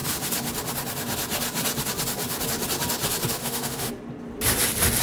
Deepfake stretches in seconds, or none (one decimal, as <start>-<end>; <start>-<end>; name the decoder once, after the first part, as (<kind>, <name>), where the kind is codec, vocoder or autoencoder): 3.4-3.9 (autoencoder, DAC-VAE)